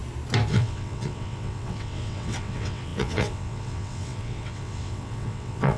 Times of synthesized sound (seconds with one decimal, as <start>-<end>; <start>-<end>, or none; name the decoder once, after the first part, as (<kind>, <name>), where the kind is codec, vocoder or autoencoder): 0.5-5.8 (vocoder, WaveNeXt)